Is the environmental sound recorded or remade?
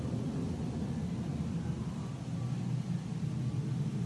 recorded